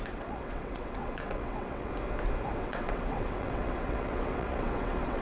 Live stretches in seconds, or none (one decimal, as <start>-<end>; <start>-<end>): 1.9-2.6